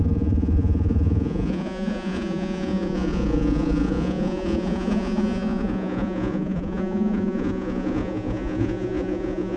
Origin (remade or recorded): remade